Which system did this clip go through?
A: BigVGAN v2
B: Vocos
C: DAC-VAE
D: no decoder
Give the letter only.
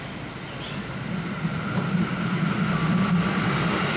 D